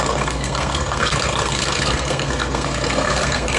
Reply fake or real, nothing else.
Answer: fake